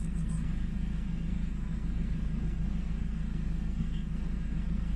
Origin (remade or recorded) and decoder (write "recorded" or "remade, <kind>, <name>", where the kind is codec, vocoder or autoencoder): remade, codec, SNAC